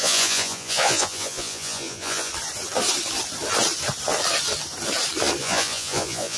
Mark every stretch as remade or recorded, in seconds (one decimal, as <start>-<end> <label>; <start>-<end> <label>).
0.0-2.3 remade; 2.3-5.4 recorded; 5.4-6.4 remade